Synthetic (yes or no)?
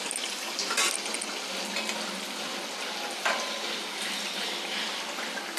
no